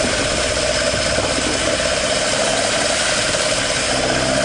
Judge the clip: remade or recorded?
recorded